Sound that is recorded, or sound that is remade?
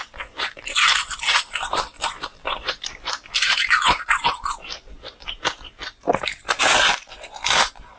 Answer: remade